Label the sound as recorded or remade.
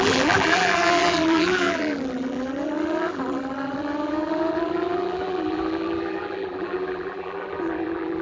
remade